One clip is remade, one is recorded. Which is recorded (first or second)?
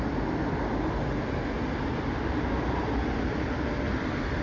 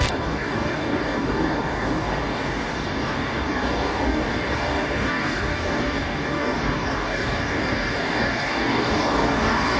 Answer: first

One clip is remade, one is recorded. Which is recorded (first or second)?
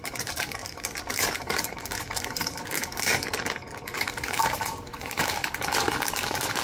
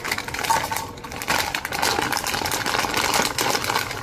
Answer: second